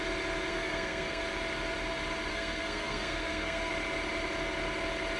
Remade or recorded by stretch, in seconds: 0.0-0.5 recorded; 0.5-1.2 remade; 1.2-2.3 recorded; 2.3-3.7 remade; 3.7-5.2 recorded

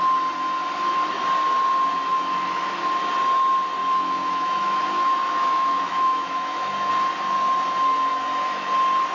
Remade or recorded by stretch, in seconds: 0.0-2.1 recorded; 2.1-2.8 remade; 2.8-3.8 recorded; 3.8-6.9 remade; 6.9-8.1 recorded; 8.1-8.7 remade; 8.7-9.1 recorded

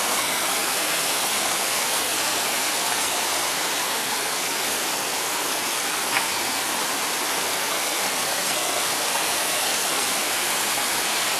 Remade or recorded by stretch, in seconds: 0.0-6.7 remade; 6.7-7.3 recorded; 7.3-11.4 remade

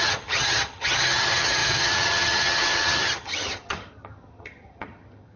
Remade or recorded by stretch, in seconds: 0.0-5.4 remade

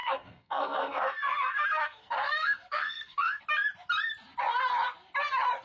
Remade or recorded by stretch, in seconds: 0.0-3.4 remade; 3.4-5.6 recorded

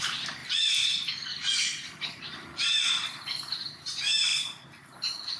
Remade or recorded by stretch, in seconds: 0.0-2.7 remade; 2.7-3.5 recorded; 3.5-5.4 remade

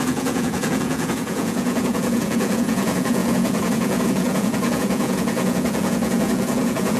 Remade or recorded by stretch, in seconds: 0.0-7.0 remade